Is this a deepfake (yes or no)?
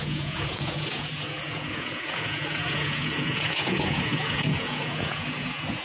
yes